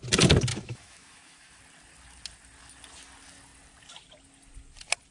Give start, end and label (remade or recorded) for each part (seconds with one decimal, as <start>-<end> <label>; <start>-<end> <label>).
0.0-0.5 recorded; 0.5-1.6 remade; 1.6-5.1 recorded